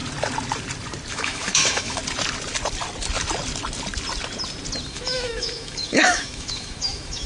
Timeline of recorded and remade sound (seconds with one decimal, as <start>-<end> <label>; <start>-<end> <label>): 0.0-1.1 recorded; 1.1-2.0 remade; 2.0-4.9 recorded; 4.9-7.3 remade